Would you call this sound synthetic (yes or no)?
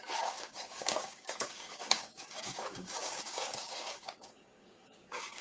yes